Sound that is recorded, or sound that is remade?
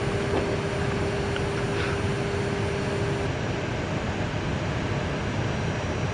recorded